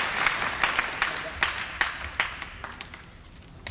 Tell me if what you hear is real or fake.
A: real